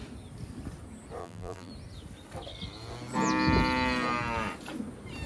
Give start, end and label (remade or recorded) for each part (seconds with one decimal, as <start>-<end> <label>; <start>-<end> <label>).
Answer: 0.0-1.2 recorded; 1.2-1.7 remade; 1.7-5.3 recorded